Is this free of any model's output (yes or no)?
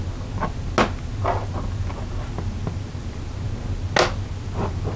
yes